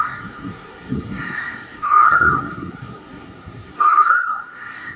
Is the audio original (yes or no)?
no